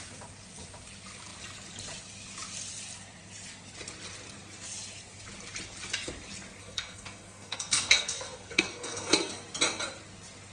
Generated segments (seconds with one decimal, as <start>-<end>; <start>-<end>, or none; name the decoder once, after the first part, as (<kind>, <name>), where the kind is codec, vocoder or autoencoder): 6.6-9.3 (codec, SNAC)